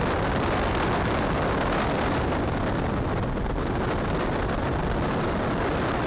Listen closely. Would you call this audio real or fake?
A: real